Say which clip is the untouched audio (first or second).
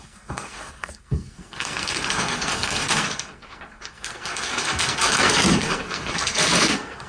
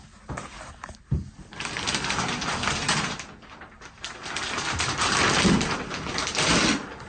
second